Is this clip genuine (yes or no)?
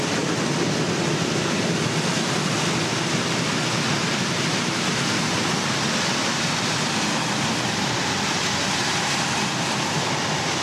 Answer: yes